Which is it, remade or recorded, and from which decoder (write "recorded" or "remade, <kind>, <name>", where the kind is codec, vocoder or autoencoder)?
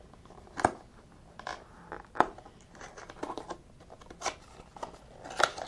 recorded